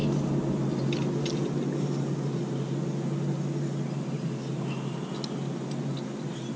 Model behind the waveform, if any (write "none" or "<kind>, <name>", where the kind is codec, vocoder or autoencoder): none